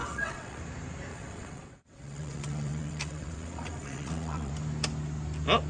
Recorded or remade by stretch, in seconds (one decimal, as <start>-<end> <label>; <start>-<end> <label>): 0.0-0.6 remade; 0.6-1.1 recorded; 1.1-4.5 remade; 4.5-5.7 recorded